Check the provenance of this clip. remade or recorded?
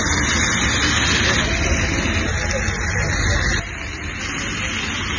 recorded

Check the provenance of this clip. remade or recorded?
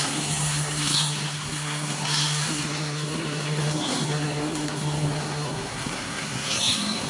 remade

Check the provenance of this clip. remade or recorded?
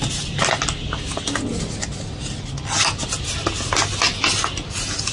recorded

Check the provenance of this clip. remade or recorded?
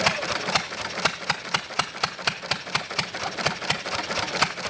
recorded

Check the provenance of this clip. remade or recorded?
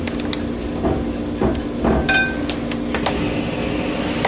recorded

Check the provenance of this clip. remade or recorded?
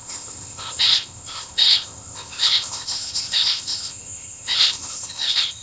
remade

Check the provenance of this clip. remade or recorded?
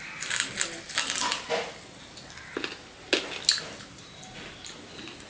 recorded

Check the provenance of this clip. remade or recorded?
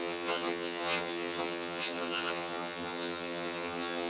remade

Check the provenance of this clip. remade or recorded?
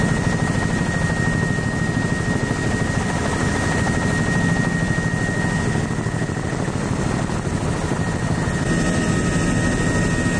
recorded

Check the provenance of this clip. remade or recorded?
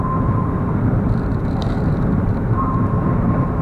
remade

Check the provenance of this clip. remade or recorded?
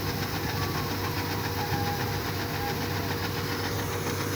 recorded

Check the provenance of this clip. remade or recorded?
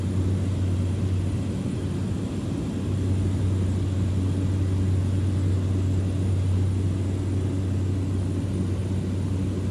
recorded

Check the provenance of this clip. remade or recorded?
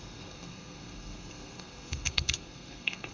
remade